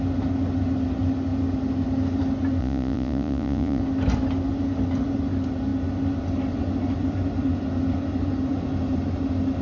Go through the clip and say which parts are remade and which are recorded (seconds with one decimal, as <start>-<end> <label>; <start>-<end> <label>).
0.0-2.6 recorded; 2.6-3.8 remade; 3.8-9.6 recorded